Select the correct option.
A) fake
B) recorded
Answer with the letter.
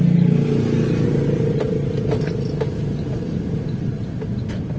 B